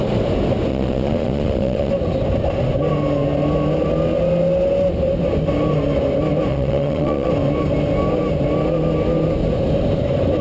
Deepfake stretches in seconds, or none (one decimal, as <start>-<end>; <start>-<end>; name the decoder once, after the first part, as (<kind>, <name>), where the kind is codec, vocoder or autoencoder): 0.7-1.9 (vocoder, Vocos); 6.5-7.3